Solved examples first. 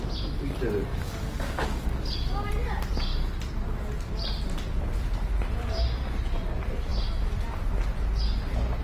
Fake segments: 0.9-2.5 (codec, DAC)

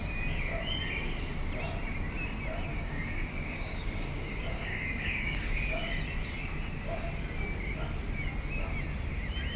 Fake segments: 2.7-5.9 (codec, DAC)

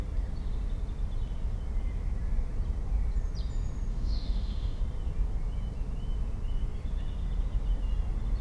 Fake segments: 3.9-4.8 (autoencoder, DAC-VAE)

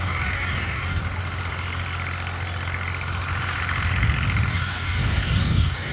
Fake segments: 0.0-1.0 (codec, DAC); 4.5-5.9